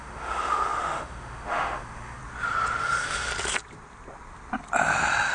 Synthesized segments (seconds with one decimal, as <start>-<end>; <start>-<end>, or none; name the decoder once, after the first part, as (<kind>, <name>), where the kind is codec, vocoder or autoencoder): 0.0-2.2 (autoencoder, DAC-VAE); 2.8-3.3